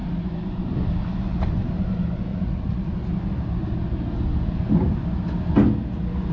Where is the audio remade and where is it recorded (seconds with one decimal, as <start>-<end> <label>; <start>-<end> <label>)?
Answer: 0.0-2.3 recorded; 2.3-2.9 remade; 2.9-6.3 recorded